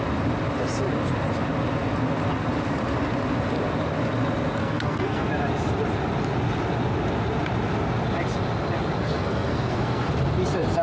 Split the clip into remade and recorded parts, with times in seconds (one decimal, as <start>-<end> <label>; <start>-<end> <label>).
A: 0.0-4.6 recorded; 4.6-5.3 remade; 5.3-9.0 recorded; 9.0-10.1 remade; 10.1-10.8 recorded

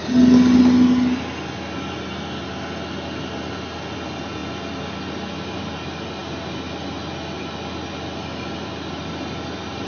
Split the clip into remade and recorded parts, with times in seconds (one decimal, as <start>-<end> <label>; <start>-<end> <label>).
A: 0.0-9.9 recorded

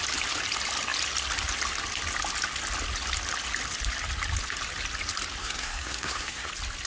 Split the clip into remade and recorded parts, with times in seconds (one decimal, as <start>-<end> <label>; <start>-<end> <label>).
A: 0.0-5.4 recorded; 5.4-6.5 remade; 6.5-6.9 recorded

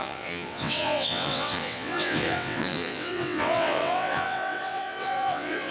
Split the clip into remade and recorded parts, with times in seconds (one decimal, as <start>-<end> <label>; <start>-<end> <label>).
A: 0.0-5.7 remade

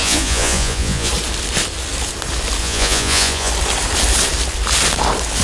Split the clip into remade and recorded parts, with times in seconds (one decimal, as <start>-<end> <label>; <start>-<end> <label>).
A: 0.0-1.1 remade; 1.1-2.6 recorded; 2.6-3.5 remade; 3.5-5.4 recorded

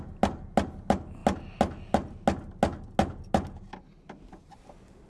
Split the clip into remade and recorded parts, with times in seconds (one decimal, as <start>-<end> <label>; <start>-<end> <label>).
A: 0.0-5.1 recorded

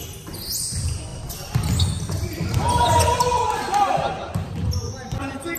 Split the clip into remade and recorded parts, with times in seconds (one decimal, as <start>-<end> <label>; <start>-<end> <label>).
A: 0.0-5.6 recorded

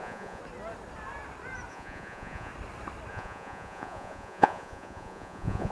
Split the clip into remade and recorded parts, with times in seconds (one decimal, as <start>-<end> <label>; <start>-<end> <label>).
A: 0.0-0.4 remade; 0.4-1.7 recorded; 1.7-2.5 remade; 2.5-3.1 recorded; 3.1-5.7 remade